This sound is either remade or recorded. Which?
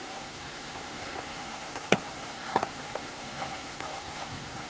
remade